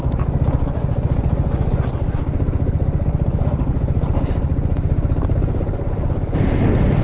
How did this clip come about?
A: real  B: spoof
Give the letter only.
A